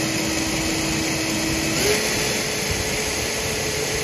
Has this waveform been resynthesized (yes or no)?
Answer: no